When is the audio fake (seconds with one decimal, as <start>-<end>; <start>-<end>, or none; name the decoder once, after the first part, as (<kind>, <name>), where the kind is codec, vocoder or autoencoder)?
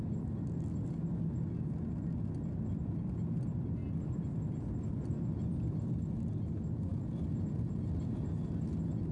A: 3.8-6.1 (vocoder, BigVGAN v2)